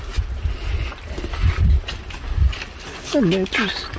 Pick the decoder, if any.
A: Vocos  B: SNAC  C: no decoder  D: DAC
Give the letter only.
C